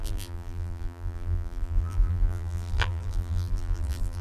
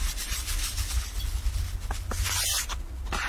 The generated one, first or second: first